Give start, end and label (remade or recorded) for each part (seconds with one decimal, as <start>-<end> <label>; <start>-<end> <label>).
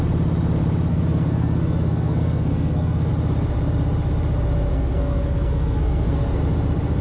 0.0-0.9 recorded; 0.9-3.1 remade; 3.1-4.7 recorded; 4.7-6.4 remade; 6.4-7.0 recorded